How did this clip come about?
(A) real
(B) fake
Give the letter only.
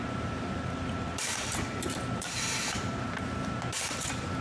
B